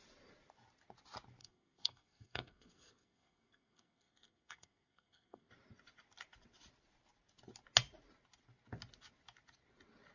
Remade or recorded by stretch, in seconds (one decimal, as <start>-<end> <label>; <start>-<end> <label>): 0.0-1.4 recorded; 1.4-5.5 remade; 5.5-10.1 recorded